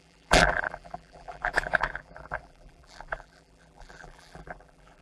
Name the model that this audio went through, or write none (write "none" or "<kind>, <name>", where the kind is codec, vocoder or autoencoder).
vocoder, BigVGAN v2